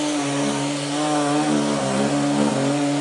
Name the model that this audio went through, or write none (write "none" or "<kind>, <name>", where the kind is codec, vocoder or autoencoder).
none